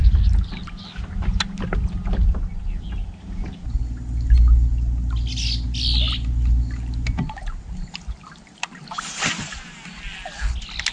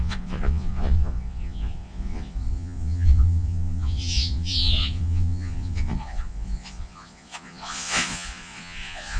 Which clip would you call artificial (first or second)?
second